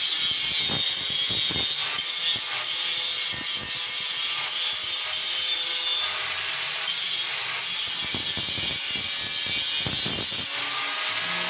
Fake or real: real